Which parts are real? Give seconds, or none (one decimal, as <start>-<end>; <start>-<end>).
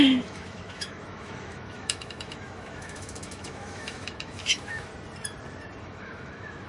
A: 4.9-5.8